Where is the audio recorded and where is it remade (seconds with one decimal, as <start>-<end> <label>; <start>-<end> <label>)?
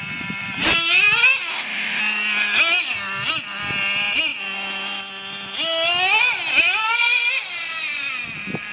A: 0.0-1.5 recorded; 1.5-2.0 remade; 2.0-8.7 recorded